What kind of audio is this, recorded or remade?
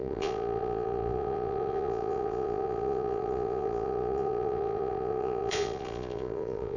remade